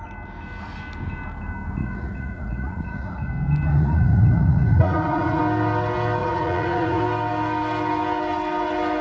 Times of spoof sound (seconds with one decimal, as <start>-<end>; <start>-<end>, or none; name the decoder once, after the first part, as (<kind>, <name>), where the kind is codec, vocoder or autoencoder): 1.8-3.3 (vocoder, Vocos); 3.7-5.4; 6.2-7.0